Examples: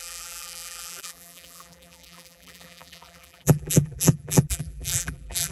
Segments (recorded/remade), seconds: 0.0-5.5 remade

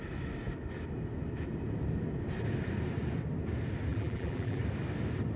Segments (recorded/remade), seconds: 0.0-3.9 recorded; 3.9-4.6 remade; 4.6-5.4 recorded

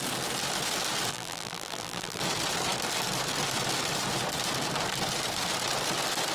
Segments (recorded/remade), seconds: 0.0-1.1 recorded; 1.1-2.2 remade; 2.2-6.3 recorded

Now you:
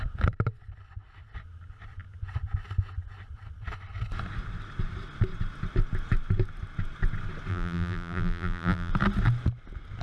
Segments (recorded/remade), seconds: 0.0-7.5 recorded; 7.5-8.9 remade; 8.9-10.0 recorded

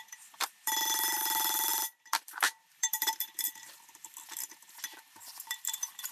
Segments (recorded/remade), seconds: 0.0-6.1 remade